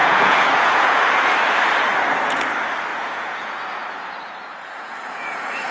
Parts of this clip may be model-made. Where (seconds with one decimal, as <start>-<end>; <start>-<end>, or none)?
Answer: 0.0-1.0; 2.9-5.7

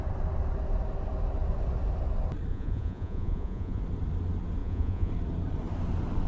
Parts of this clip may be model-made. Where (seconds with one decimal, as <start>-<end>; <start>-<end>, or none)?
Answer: 2.5-3.8; 4.6-5.1

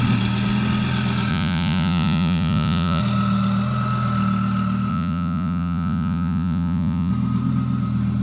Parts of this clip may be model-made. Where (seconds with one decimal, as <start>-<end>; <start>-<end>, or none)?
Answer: 1.3-3.0; 4.9-7.1

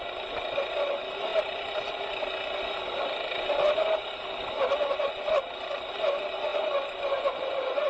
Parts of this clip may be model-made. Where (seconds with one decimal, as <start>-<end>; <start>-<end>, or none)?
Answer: 6.5-7.9

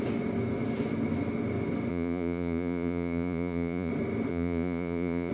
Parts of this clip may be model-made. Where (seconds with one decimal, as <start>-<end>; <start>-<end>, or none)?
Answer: 1.9-3.9; 4.3-5.3